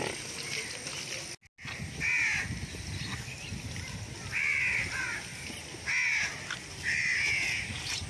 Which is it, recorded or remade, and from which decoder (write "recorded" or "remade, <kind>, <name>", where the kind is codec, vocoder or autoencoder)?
recorded